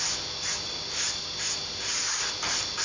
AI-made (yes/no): no